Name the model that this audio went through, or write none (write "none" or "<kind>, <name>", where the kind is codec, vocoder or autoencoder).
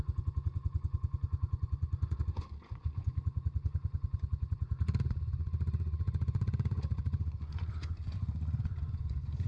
vocoder, Vocos